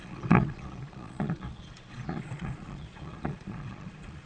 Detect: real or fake fake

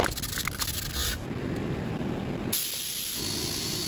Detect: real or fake real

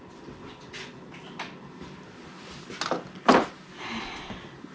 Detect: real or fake real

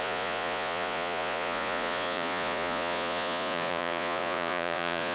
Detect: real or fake fake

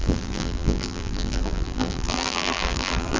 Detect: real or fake fake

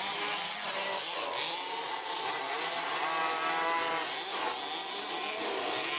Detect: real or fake real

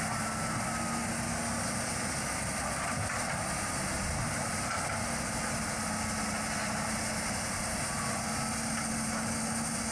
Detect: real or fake real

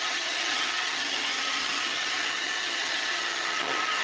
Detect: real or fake fake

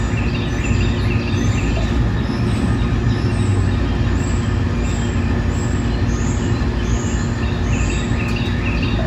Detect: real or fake real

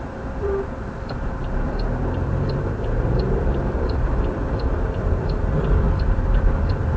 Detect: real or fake fake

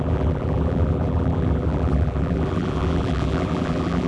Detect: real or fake fake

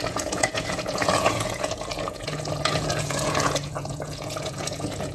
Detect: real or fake fake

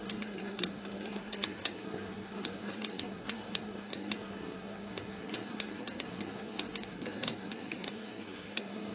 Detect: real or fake fake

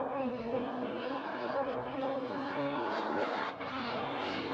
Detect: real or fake fake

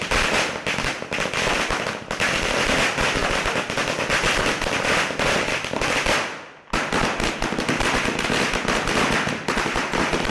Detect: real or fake real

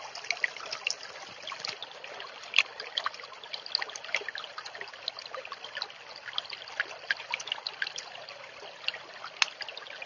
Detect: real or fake real